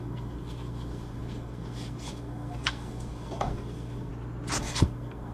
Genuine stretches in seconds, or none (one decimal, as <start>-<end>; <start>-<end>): 4.1-4.6

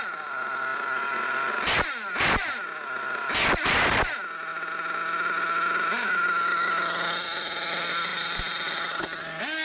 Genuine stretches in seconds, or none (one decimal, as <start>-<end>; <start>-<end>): 0.0-9.6